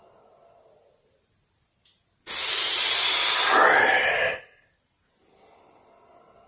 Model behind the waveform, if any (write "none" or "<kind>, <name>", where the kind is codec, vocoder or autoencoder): none